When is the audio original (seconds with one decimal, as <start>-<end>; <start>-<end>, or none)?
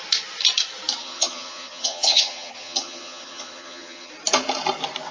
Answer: 0.0-1.0; 4.1-5.1